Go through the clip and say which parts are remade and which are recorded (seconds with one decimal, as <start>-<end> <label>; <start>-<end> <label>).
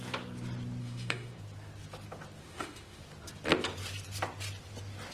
0.0-0.8 recorded; 0.8-1.4 remade; 1.4-2.4 recorded; 2.4-3.0 remade; 3.0-5.1 recorded